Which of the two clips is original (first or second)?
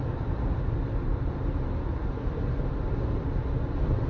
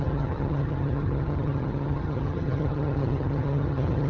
first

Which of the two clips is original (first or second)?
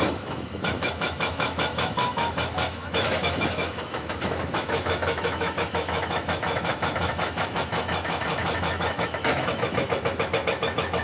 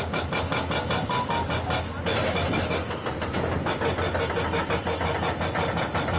second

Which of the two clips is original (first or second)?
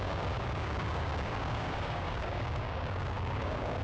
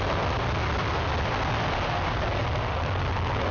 second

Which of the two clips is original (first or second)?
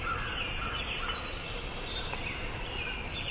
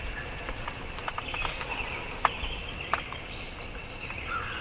second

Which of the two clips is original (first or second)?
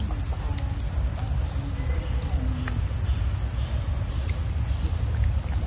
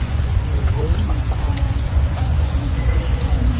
first